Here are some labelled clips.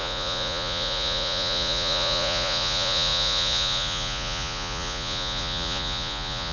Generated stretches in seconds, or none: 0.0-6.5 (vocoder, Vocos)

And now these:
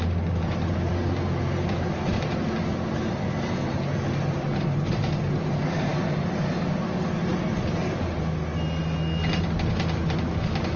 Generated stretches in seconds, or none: none

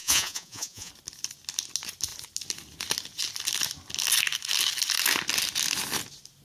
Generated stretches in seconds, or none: 0.0-0.9 (vocoder, Vocos)